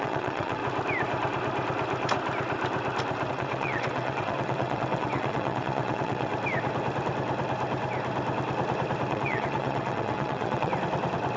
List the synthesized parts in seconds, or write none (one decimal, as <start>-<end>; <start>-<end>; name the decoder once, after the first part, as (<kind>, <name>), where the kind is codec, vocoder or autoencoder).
0.0-0.6 (vocoder, WaveNeXt); 3.3-6.3; 9.1-10.7